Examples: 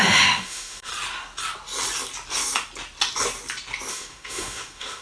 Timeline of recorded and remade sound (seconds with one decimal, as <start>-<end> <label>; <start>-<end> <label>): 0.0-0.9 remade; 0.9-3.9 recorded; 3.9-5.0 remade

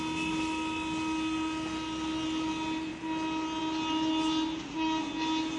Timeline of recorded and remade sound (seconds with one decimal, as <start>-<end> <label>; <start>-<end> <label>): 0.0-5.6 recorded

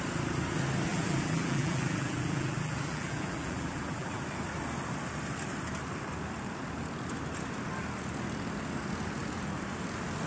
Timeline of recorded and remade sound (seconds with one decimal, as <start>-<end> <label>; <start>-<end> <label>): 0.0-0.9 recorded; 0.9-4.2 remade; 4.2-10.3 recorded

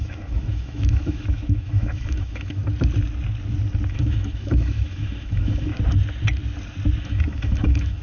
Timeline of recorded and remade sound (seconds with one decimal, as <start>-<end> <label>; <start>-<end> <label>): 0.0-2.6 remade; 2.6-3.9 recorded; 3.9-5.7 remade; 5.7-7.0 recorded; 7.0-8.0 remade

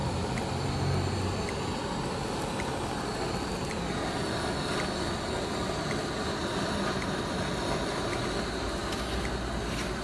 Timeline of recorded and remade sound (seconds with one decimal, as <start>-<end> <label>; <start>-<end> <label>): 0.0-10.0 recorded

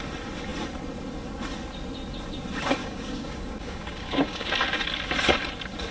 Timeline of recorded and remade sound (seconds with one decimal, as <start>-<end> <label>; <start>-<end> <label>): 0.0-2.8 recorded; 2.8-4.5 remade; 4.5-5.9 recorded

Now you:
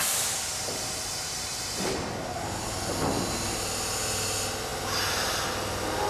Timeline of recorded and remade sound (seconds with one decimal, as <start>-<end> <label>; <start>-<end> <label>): 0.0-6.1 recorded